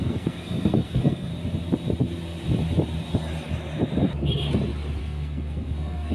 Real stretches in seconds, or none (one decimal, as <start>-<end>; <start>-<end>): 1.3-5.0

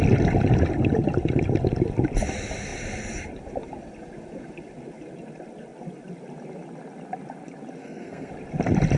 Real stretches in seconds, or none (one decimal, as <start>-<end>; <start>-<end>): 0.0-7.8; 8.3-9.0

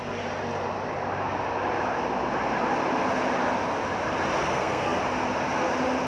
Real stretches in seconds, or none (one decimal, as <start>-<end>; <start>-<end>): 0.0-4.4; 5.0-6.1

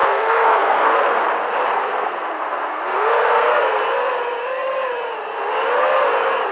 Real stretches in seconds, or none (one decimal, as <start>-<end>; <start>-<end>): 1.2-1.7; 3.8-6.5

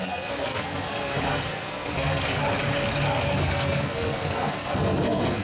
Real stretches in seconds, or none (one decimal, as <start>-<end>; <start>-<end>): 2.4-3.2

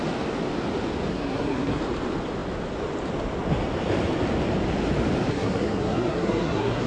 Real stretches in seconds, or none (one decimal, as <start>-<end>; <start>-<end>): 0.0-1.1; 1.8-5.3